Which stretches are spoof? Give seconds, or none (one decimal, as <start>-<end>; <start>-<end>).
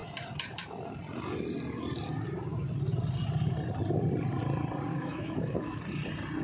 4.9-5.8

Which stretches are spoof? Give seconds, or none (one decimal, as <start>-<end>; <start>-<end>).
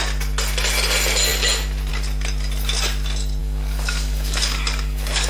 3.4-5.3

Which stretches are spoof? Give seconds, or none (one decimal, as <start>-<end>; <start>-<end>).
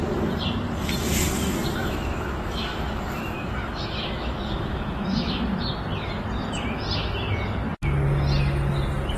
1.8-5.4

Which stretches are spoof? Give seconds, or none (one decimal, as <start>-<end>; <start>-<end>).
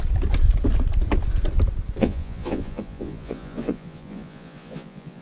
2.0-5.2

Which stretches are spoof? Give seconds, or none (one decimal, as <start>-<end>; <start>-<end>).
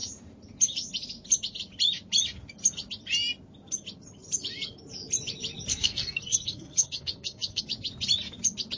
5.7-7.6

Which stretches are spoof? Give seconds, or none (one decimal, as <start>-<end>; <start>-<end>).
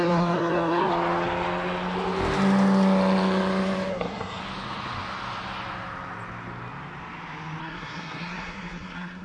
0.0-0.9; 3.9-4.4; 7.6-9.2